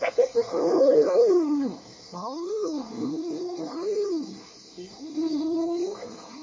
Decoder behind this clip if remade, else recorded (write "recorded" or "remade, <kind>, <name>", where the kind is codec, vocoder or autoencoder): remade, codec, SNAC